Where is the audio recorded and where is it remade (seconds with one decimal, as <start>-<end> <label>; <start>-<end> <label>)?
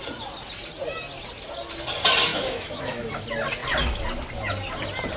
0.0-2.3 recorded; 2.3-3.1 remade; 3.1-5.2 recorded